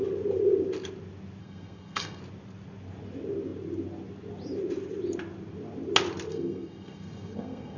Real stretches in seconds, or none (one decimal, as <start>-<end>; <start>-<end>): 0.0-1.4; 2.2-6.3